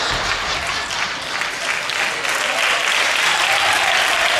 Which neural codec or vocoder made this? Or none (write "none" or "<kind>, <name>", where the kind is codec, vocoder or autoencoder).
none